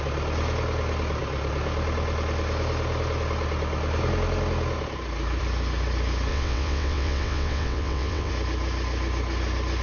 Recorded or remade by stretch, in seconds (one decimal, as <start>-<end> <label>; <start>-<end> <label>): 0.0-6.3 recorded; 6.3-8.3 remade; 8.3-9.8 recorded